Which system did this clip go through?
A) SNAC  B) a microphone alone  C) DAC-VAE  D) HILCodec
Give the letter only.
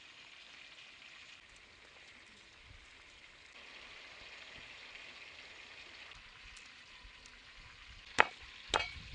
B